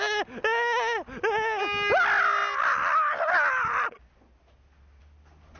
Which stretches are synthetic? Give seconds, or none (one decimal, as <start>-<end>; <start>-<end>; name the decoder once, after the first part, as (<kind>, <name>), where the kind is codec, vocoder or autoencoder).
none